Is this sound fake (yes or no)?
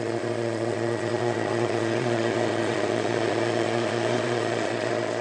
yes